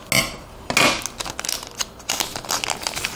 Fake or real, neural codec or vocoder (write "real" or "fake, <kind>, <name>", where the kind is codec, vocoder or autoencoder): real